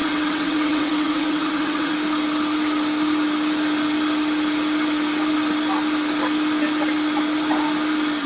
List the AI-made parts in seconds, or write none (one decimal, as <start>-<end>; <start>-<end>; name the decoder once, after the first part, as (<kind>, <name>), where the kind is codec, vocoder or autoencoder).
0.0-1.9 (vocoder, WaveNeXt)